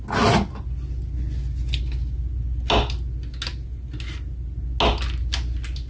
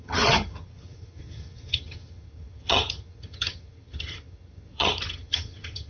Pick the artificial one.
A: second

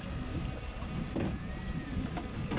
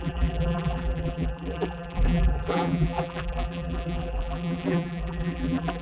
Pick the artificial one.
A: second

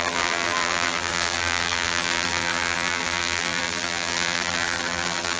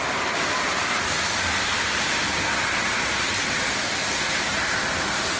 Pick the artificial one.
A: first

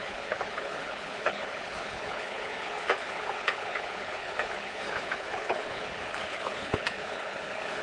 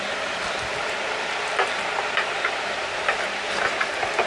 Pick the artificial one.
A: first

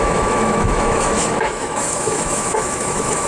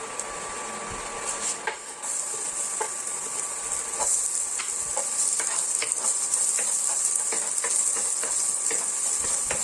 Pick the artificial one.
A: first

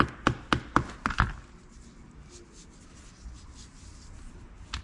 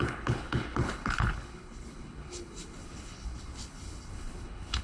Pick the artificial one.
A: second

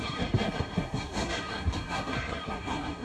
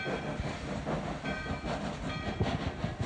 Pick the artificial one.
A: first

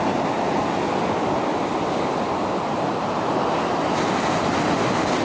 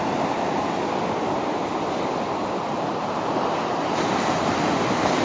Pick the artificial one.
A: second